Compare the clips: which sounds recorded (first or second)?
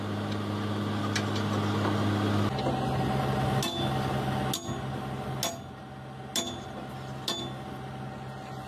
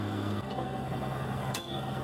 first